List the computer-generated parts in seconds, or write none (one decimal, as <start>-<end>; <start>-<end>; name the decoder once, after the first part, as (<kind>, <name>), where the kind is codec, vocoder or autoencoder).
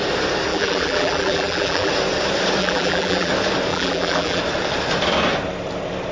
0.5-1.9 (vocoder, BigVGAN v2); 2.6-3.3; 3.7-4.4